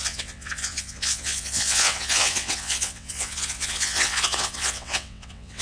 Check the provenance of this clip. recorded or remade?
remade